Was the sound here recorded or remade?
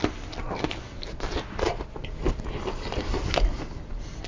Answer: recorded